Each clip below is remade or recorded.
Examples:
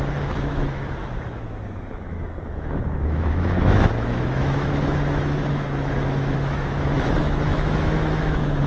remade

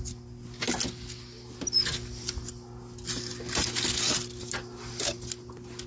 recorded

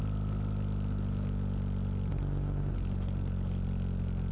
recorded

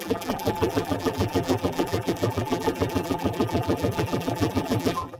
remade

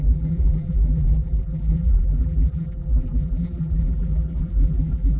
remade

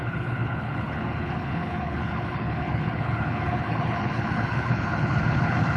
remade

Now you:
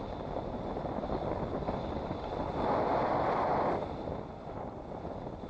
recorded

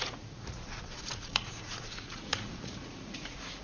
remade